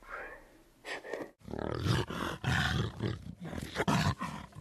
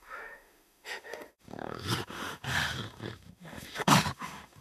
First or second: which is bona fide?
first